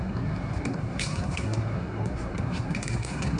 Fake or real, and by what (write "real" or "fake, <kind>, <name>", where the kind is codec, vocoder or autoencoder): fake, codec, SNAC